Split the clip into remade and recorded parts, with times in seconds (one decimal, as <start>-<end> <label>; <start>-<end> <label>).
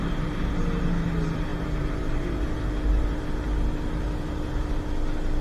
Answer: 0.0-5.4 recorded